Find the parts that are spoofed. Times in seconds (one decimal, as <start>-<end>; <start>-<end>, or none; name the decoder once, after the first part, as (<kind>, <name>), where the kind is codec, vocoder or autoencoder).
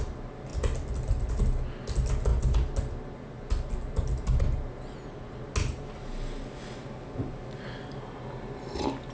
none